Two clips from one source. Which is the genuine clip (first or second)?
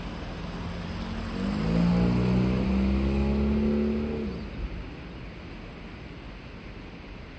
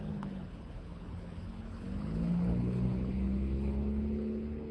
first